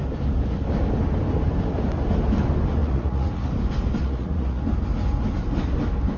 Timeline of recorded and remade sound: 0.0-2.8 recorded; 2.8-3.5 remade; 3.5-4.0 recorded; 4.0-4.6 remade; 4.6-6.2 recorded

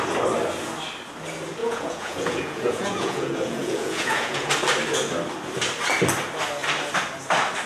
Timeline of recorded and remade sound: 0.0-1.6 recorded; 1.6-4.5 remade; 4.5-7.7 recorded

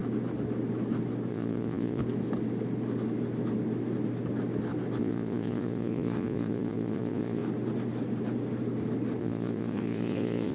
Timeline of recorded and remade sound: 0.0-1.3 recorded; 1.3-2.0 remade; 2.0-5.0 recorded; 5.0-7.4 remade; 7.4-9.2 recorded; 9.2-10.5 remade

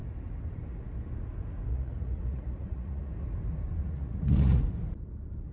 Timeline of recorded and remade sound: 0.0-1.7 recorded; 1.7-3.1 remade; 3.1-3.8 recorded; 3.8-4.6 remade; 4.6-5.5 recorded

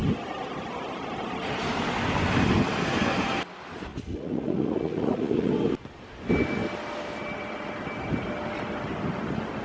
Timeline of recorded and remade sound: 0.0-3.9 recorded; 3.9-5.5 remade; 5.5-9.6 recorded

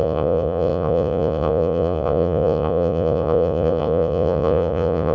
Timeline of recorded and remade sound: 0.0-5.1 remade

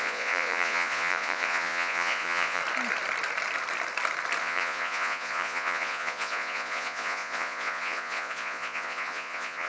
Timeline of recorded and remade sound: 0.0-2.6 remade; 2.6-4.4 recorded; 4.4-9.7 remade